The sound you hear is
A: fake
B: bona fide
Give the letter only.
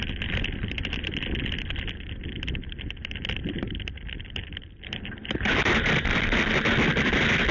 B